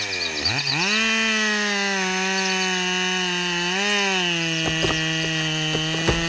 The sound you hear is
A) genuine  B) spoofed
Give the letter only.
A